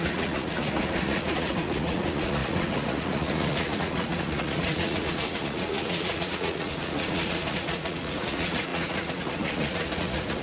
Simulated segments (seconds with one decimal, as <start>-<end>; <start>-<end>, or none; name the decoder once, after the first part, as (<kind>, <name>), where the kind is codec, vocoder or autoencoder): 0.0-10.4 (vocoder, Vocos)